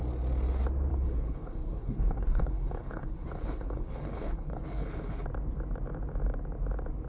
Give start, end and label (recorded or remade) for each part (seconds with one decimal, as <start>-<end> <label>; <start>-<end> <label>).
0.0-0.9 recorded; 0.9-5.2 remade; 5.2-7.1 recorded